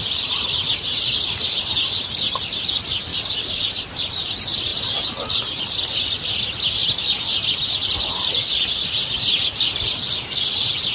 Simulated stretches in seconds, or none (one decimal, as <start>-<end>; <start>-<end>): 3.1-4.3